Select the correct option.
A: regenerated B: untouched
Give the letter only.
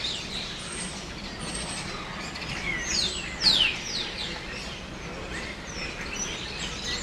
B